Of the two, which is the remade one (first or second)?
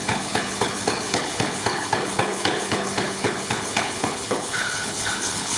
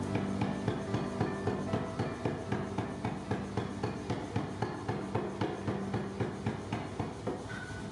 first